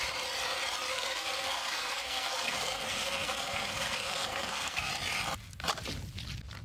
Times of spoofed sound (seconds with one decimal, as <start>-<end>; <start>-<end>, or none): 0.9-4.9

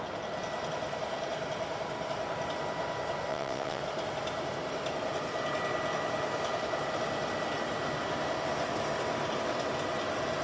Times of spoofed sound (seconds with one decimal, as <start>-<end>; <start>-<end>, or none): 3.3-3.8